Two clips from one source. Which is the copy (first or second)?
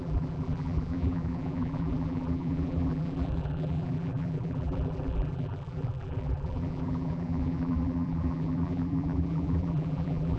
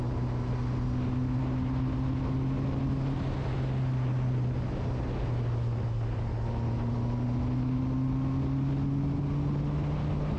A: first